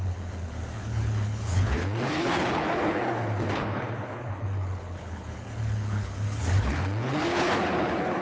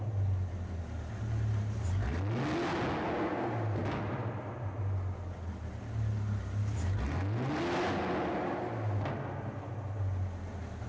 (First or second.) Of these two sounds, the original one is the second